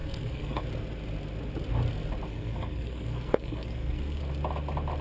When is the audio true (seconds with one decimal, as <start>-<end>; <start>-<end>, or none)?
0.6-2.3; 4.2-5.0